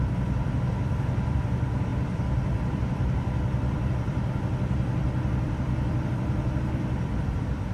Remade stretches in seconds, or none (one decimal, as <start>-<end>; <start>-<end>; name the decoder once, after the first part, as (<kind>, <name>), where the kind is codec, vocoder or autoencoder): 0.0-7.7 (vocoder, BigVGAN v2)